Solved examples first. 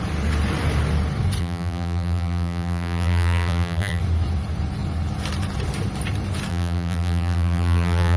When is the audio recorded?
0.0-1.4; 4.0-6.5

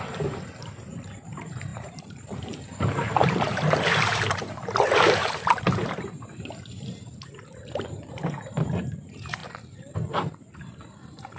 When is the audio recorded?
9.4-10.1

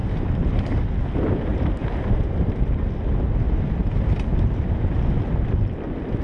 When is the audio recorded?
0.6-1.5; 2.9-6.2

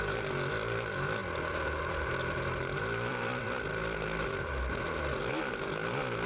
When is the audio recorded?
0.0-1.2; 1.8-3.1; 4.5-6.3

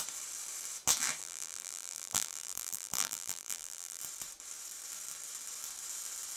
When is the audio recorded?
0.0-1.2; 4.0-6.4

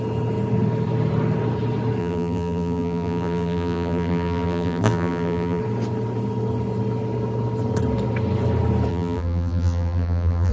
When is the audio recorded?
0.0-2.0; 5.6-8.9

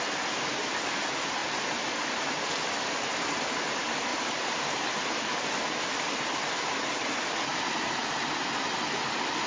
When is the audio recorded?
0.0-4.1; 5.5-9.5

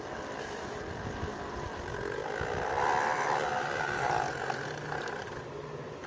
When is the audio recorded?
0.0-6.1